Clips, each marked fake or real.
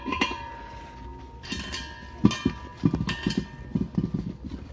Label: real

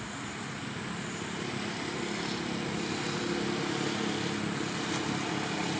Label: real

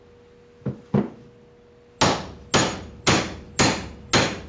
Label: real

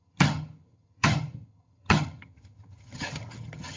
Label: fake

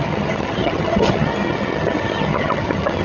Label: fake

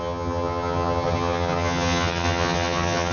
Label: fake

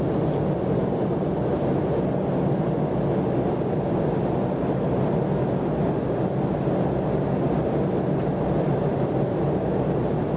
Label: real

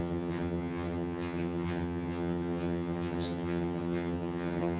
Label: fake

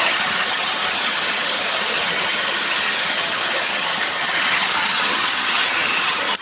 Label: fake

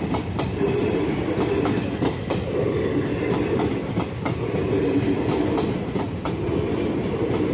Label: real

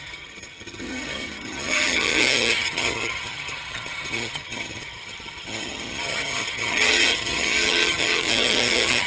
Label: fake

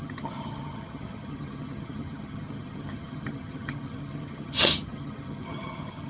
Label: fake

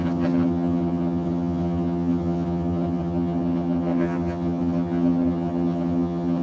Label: fake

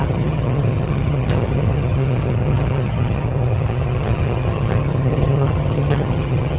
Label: fake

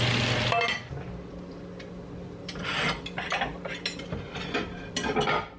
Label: real